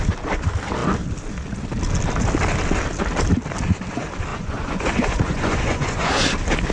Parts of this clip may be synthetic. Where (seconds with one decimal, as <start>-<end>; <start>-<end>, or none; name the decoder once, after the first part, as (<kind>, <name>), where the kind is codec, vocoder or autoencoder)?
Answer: 4.3-6.1 (vocoder, Vocos)